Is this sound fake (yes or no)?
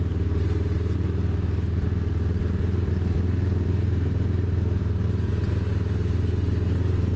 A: no